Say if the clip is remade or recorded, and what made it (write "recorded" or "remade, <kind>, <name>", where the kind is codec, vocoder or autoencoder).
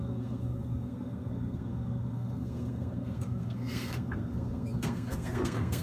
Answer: remade, codec, SNAC